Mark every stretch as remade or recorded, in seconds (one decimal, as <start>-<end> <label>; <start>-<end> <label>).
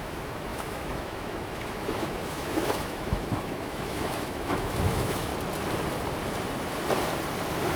0.0-5.3 remade; 5.3-7.8 recorded